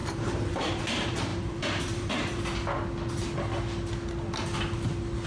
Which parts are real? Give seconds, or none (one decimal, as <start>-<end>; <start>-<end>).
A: 0.8-1.3; 2.4-5.3